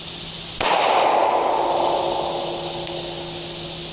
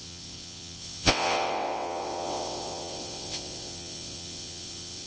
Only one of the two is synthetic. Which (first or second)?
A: second